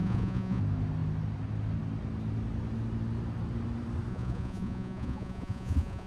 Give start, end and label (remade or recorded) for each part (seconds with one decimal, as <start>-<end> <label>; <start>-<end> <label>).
0.0-0.6 remade; 0.6-4.1 recorded; 4.1-6.1 remade